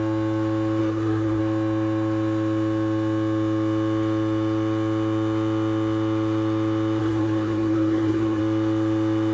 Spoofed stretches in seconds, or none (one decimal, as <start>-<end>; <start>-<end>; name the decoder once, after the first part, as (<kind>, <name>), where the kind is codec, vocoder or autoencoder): 0.8-1.4 (codec, SNAC); 7.0-8.4